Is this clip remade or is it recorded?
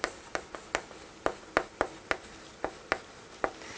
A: recorded